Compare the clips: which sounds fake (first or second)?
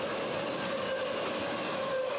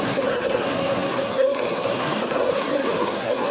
second